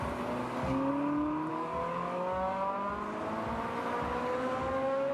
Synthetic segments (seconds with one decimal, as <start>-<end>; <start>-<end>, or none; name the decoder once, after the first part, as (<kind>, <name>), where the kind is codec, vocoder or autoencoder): 0.4-0.9 (codec, DAC); 1.5-2.9; 4.2-5.1